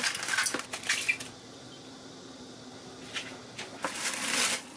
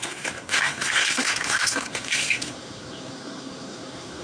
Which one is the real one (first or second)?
first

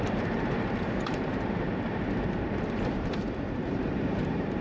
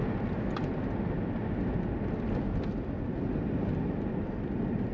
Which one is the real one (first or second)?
second